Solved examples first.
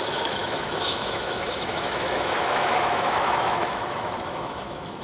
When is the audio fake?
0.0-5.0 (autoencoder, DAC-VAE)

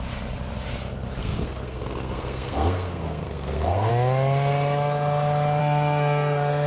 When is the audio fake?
1.2-3.9 (codec, SNAC); 5.6-6.7

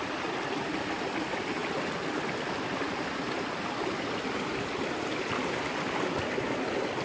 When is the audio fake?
none

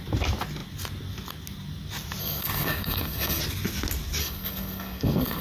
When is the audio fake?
2.2-3.4 (codec, SNAC); 4.2-5.4

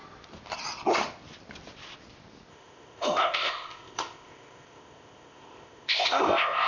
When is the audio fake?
2.5-6.7 (codec, ZipCodec)

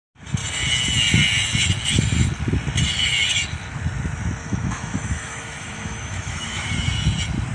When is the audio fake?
4.4-6.7 (autoencoder, DAC-VAE)

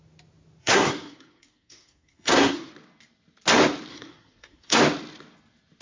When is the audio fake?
0.6-2.7 (codec, SNAC); 3.9-4.8